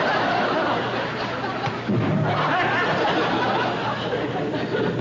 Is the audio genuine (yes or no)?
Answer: yes